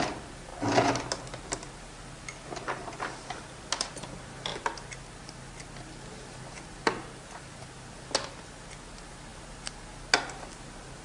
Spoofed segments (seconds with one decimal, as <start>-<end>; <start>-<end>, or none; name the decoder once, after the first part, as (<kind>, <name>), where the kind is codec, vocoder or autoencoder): none